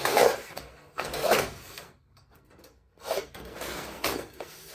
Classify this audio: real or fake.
fake